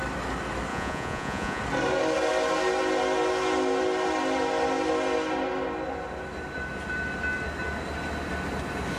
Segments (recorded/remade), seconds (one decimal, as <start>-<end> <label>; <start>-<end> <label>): 0.0-0.7 recorded; 0.7-1.6 remade; 1.6-9.0 recorded